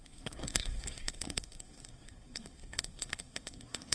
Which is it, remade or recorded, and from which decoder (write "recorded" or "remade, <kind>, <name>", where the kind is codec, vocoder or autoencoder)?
remade, codec, SNAC